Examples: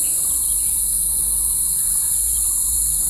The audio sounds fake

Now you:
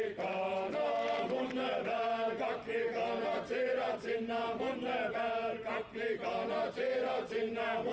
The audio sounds real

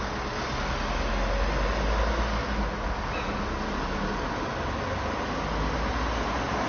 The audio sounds real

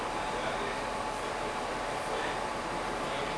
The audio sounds fake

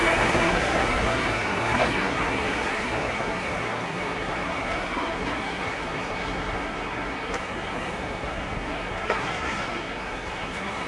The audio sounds fake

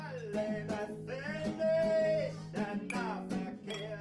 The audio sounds real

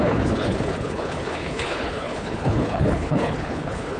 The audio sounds fake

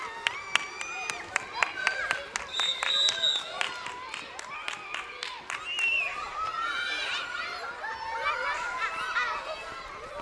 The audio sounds real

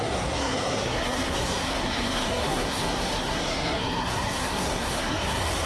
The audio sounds fake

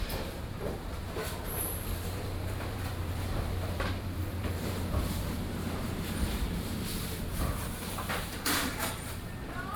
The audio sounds fake